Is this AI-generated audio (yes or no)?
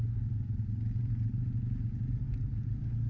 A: no